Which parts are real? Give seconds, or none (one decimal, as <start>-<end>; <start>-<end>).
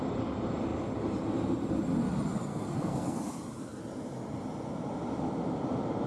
0.0-2.5; 3.2-6.1